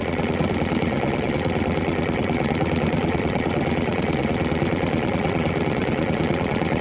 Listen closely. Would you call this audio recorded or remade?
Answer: remade